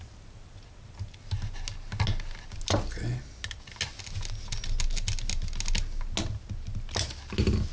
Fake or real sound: real